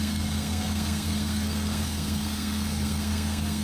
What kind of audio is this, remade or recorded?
remade